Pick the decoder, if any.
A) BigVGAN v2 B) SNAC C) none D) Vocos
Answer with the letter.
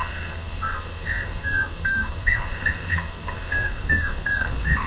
B